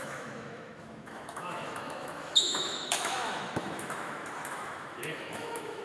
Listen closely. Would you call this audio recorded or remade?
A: remade